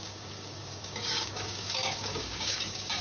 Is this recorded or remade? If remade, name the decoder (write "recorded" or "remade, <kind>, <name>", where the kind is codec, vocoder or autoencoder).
remade, codec, DAC